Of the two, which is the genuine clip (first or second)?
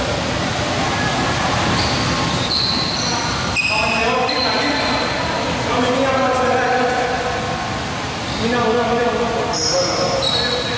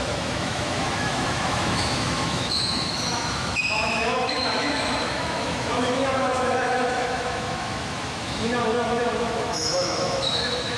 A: first